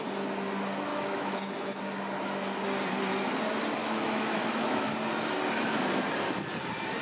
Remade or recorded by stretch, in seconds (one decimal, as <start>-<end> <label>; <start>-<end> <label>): 0.0-0.9 recorded; 0.9-1.8 remade; 1.8-3.8 recorded; 3.8-4.9 remade; 4.9-7.0 recorded